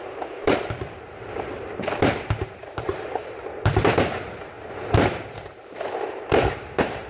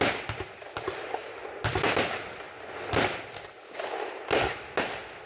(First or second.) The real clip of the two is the second